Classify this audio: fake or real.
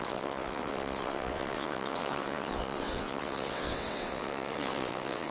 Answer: fake